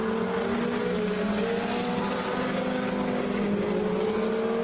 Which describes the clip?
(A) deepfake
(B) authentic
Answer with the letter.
B